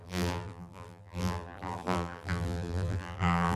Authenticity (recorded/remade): remade